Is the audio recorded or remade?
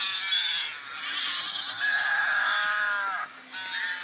recorded